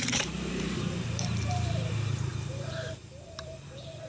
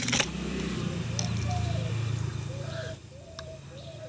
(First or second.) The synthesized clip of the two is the first